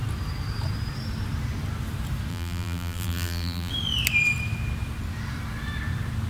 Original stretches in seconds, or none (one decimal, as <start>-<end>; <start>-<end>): 0.0-2.3; 3.7-6.3